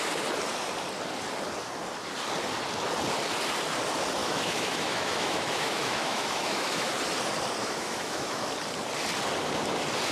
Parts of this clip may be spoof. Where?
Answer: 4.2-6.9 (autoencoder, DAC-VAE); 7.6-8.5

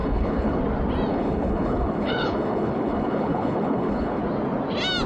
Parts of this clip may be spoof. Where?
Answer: 0.0-0.6 (codec, HILCodec); 1.1-4.2

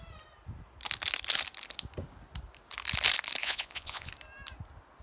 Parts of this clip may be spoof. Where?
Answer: 3.4-4.1 (vocoder, Vocos)

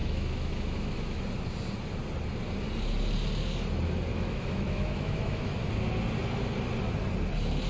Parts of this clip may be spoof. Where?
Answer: 0.0-1.2 (autoencoder, DAC-VAE); 4.1-5.6

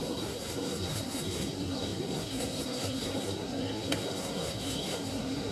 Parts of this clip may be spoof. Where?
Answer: 0.0-5.5 (codec, SNAC)

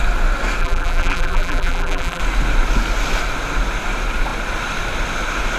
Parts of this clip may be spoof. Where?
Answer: 0.6-2.2 (vocoder, BigVGAN v2)